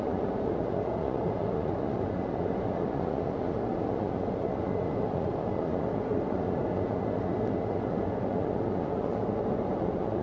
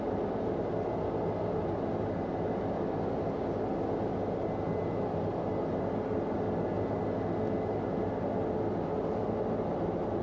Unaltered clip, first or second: second